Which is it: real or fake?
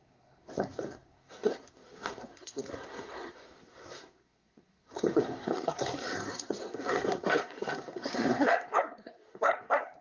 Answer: fake